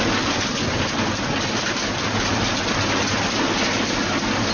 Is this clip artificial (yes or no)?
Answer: no